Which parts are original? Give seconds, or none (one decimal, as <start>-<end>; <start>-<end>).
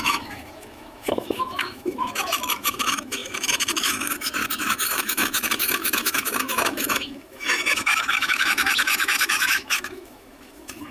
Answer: none